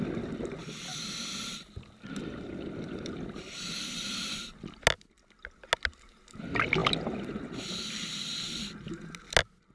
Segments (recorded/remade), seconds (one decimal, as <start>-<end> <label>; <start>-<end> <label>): 0.0-0.9 recorded; 0.9-4.4 remade; 4.4-9.7 recorded

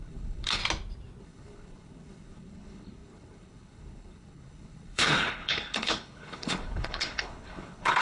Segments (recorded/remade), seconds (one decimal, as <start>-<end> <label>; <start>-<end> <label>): 0.0-0.6 remade; 0.6-1.2 recorded; 1.2-8.0 remade

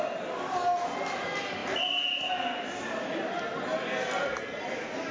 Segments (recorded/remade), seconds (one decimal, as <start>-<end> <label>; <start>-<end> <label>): 0.0-5.1 recorded

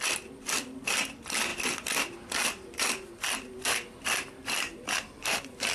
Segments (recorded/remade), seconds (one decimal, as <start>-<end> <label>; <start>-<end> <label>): 0.0-5.7 remade

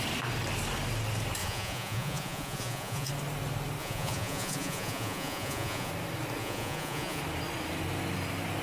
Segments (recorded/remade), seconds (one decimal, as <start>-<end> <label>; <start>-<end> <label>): 0.0-1.4 recorded; 1.4-3.1 remade; 3.1-3.8 recorded; 3.8-5.9 remade; 5.9-6.4 recorded; 6.4-7.2 remade; 7.2-8.6 recorded